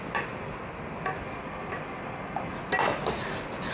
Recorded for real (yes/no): yes